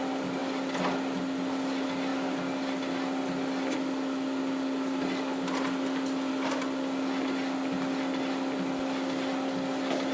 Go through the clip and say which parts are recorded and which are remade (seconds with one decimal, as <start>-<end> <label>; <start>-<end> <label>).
0.0-10.1 recorded